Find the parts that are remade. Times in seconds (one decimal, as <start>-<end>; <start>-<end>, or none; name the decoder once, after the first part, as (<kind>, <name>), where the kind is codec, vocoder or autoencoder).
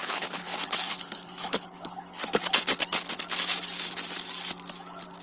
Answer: 0.0-2.7 (codec, HILCodec)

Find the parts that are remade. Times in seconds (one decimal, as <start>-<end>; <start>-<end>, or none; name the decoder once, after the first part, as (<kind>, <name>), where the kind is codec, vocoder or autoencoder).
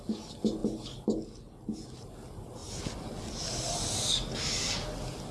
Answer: none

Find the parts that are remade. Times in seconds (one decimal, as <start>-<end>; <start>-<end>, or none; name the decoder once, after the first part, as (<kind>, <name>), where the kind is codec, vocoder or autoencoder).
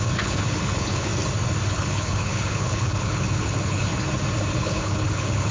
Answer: 0.0-1.1 (codec, HILCodec); 1.7-3.9; 4.5-5.5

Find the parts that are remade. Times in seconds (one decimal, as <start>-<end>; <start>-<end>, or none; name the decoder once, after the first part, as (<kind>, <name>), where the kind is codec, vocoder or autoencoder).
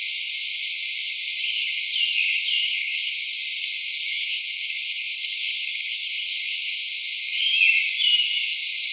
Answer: 2.6-3.1 (codec, HILCodec); 4.1-6.9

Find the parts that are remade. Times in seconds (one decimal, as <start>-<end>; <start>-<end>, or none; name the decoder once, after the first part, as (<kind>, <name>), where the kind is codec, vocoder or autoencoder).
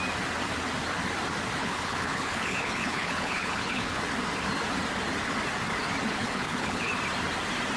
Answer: 1.6-4.0 (codec, HILCodec); 6.1-6.9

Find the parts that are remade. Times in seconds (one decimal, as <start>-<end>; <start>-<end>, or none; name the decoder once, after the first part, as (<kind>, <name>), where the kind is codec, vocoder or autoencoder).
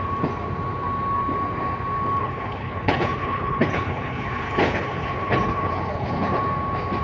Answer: 2.2-6.4 (codec, HILCodec)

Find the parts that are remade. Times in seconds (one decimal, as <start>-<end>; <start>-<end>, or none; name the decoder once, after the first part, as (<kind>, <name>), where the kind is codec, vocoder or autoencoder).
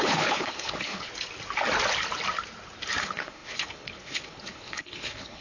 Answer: 0.0-1.1 (codec, HILCodec); 3.0-5.4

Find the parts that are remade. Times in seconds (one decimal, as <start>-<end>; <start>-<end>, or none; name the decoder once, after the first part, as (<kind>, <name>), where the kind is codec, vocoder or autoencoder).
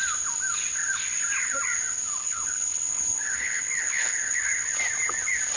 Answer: 2.2-4.7 (codec, HILCodec)